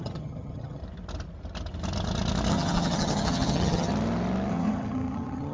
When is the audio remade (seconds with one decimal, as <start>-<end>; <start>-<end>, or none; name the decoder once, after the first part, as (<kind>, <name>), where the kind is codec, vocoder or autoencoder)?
0.0-0.8 (vocoder, HiFi-GAN); 2.5-3.9; 4.5-5.5